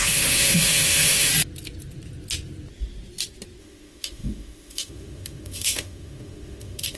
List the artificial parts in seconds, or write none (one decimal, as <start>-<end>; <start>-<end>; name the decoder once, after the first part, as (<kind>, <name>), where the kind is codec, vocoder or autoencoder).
0.0-1.3 (autoencoder, DAC-VAE); 3.6-7.0